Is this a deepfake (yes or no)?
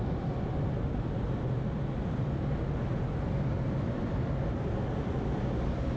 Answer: no